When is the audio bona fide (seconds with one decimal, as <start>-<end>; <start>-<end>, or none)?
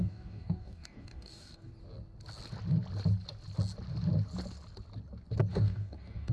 1.7-5.5